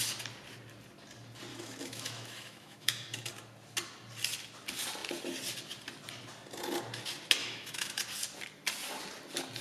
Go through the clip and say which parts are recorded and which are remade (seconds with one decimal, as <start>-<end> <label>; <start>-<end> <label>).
0.0-1.5 recorded; 1.5-3.3 remade; 3.3-7.4 recorded; 7.4-8.0 remade; 8.0-9.6 recorded